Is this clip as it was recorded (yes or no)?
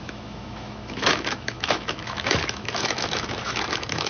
no